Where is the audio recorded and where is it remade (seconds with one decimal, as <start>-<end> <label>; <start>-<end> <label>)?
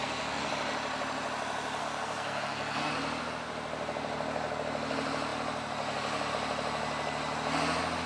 0.0-0.5 remade; 0.5-1.8 recorded; 1.8-2.9 remade; 2.9-8.1 recorded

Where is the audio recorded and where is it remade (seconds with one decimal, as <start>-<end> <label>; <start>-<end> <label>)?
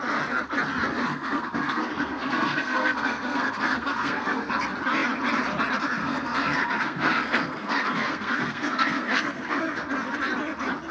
0.0-1.1 recorded; 1.1-4.5 remade; 4.5-6.0 recorded; 6.0-9.9 remade; 9.9-10.9 recorded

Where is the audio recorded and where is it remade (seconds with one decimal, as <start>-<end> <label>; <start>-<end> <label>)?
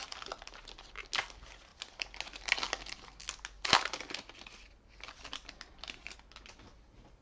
0.0-7.2 recorded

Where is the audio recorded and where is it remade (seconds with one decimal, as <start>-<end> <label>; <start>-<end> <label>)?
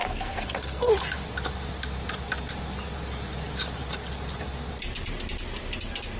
0.0-0.9 remade; 0.9-6.2 recorded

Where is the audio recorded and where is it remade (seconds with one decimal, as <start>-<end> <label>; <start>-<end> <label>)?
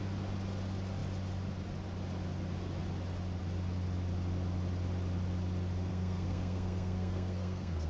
0.0-5.9 recorded; 5.9-7.9 remade